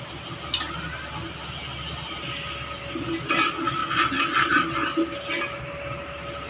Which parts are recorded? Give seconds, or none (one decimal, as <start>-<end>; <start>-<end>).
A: 0.0-6.5